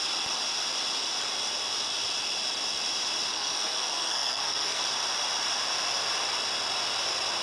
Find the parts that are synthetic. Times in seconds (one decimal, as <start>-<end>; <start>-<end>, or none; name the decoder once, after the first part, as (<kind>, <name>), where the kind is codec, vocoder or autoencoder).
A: 3.3-4.8 (codec, SNAC)